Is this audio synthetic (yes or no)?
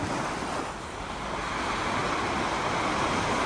no